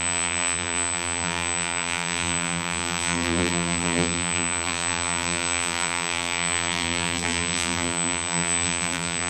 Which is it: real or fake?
fake